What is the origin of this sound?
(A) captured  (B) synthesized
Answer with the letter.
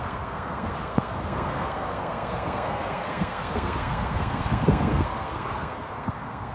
B